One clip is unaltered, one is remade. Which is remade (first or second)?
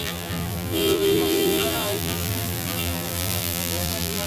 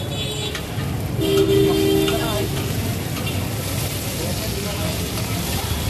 first